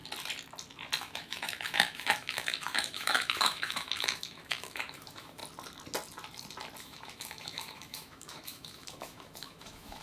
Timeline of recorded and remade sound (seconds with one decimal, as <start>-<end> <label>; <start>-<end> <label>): 0.0-1.0 recorded; 1.0-5.4 remade; 5.4-6.8 recorded; 6.8-10.0 remade